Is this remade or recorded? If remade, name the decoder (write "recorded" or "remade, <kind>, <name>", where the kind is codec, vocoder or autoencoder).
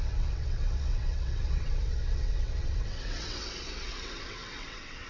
remade, vocoder, WaveNeXt